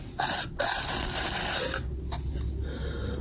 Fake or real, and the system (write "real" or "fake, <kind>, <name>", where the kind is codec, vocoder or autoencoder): real